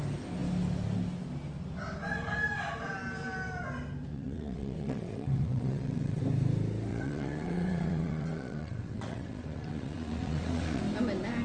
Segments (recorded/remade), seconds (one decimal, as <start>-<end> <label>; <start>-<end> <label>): 0.0-4.1 recorded; 4.1-6.2 remade; 6.2-6.9 recorded; 6.9-10.8 remade; 10.8-11.4 recorded